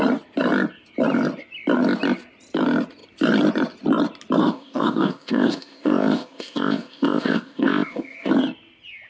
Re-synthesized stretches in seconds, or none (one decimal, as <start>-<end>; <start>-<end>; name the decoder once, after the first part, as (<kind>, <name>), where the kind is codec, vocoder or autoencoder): 4.4-8.3 (codec, ZipCodec)